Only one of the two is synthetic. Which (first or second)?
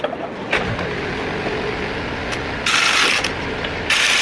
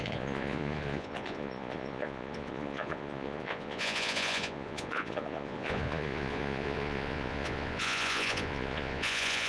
second